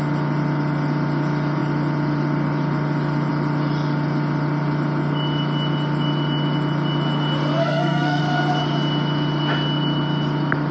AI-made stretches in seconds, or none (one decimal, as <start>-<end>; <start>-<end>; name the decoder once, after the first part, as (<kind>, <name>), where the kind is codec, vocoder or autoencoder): 7.6-8.2 (codec, SNAC)